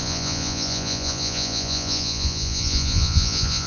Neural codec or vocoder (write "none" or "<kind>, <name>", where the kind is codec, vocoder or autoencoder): vocoder, Vocos